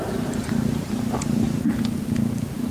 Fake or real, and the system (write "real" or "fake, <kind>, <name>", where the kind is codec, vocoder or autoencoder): real